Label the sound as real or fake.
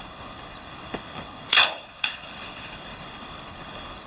fake